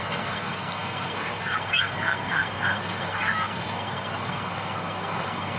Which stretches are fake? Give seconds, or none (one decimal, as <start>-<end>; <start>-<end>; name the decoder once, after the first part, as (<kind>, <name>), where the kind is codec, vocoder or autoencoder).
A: 0.0-5.6 (codec, SNAC)